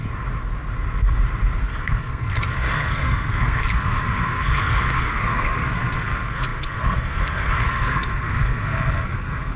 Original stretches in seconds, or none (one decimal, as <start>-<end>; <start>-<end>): 0.0-1.6